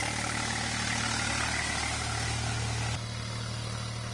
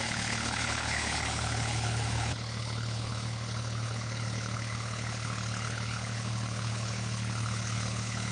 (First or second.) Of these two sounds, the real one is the first